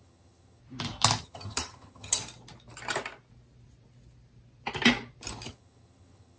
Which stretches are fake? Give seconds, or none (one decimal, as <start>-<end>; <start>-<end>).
0.0-0.6; 1.2-2.2; 5.5-6.4